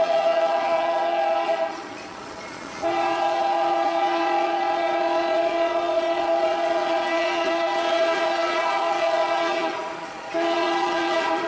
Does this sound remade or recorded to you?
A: remade